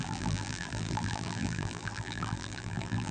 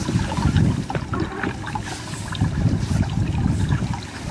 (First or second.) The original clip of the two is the second